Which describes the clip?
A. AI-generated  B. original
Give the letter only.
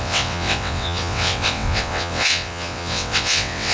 A